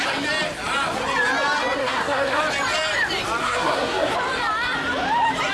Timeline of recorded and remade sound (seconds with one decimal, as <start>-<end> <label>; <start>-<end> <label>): 0.0-1.8 recorded; 1.8-2.4 remade; 2.4-3.4 recorded; 3.4-4.1 remade; 4.1-5.5 recorded